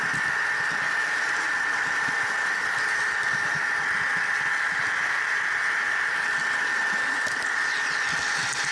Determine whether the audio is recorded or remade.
recorded